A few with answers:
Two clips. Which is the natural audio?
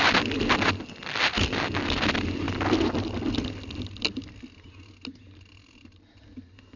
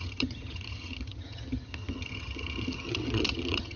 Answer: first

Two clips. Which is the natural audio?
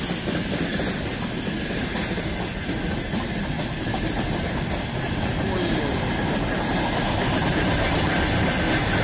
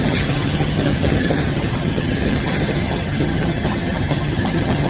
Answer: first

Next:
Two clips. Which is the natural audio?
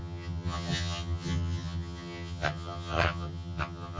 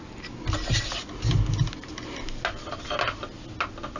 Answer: second